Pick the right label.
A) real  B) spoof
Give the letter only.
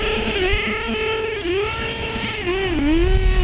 A